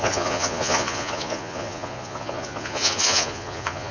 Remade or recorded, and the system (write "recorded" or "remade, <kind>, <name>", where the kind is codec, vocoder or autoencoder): remade, vocoder, Vocos